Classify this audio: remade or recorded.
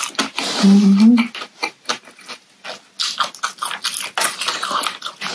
recorded